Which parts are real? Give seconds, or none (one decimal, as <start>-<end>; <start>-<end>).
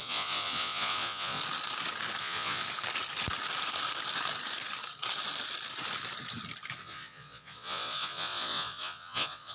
1.4-2.2; 2.6-6.8